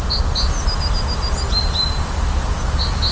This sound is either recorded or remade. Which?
recorded